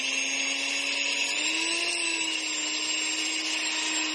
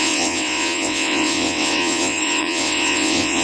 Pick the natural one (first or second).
first